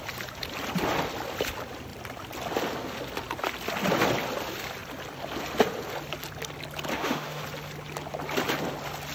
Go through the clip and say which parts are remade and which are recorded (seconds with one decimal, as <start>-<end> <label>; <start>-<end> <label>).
0.0-6.9 recorded; 6.9-7.4 remade; 7.4-9.1 recorded

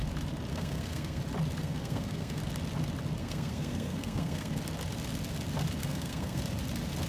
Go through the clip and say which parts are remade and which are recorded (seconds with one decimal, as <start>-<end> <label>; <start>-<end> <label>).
0.0-0.5 recorded; 0.5-1.2 remade; 1.2-1.6 recorded; 1.6-2.4 remade; 2.4-3.2 recorded; 3.2-4.6 remade; 4.6-5.8 recorded; 5.8-6.4 remade; 6.4-7.1 recorded

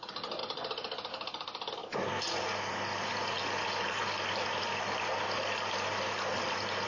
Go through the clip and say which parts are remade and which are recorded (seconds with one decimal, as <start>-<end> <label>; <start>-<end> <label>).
0.0-6.9 recorded